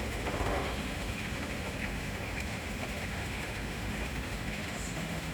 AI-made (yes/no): yes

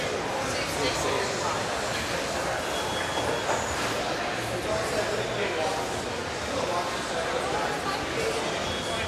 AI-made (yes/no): no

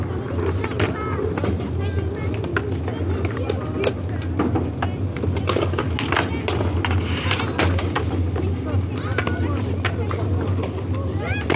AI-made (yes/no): no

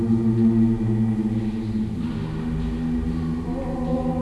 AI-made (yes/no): no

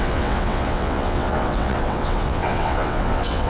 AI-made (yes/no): yes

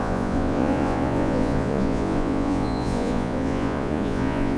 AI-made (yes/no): yes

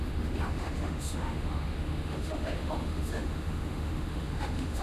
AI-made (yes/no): yes